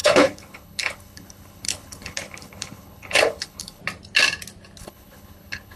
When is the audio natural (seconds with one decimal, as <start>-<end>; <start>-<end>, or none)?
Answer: 3.8-4.8